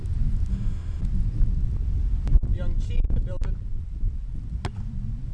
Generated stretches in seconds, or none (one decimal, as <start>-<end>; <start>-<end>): 0.5-1.0